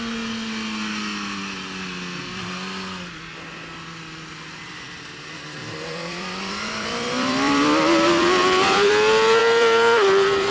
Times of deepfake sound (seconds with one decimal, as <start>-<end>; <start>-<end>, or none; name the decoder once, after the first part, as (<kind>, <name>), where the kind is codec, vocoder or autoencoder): 5.6-8.9 (vocoder, BigVGAN v2); 9.4-10.5